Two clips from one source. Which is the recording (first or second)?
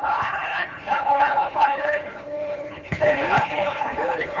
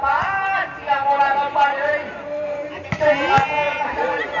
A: second